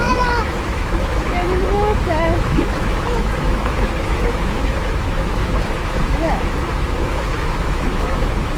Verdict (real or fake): fake